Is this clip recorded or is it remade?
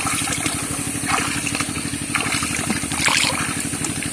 recorded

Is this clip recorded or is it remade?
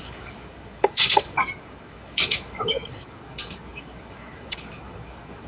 remade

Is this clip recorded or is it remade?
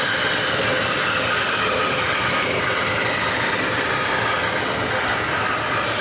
recorded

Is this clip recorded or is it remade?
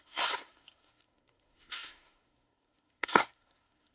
remade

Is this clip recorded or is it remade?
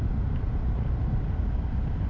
recorded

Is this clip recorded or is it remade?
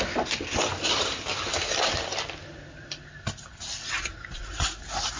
recorded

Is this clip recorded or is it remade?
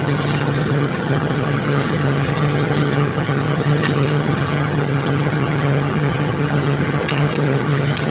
remade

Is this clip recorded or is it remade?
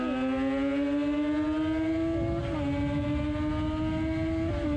recorded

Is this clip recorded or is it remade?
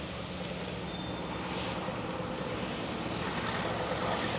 recorded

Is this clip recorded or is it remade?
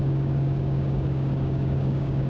remade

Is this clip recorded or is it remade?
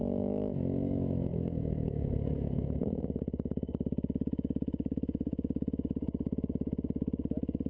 remade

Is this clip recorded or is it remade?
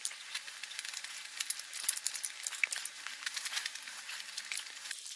recorded